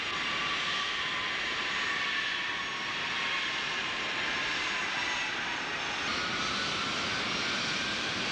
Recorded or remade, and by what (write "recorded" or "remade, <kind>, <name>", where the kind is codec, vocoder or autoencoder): remade, vocoder, BigVGAN v2